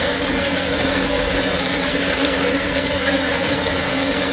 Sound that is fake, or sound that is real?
fake